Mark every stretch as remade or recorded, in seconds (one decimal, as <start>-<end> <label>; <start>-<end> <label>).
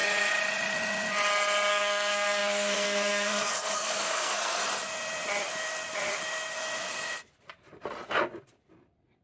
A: 0.0-1.7 recorded; 1.7-4.6 remade; 4.6-9.2 recorded